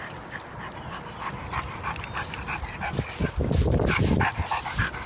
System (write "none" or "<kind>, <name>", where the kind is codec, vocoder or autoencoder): none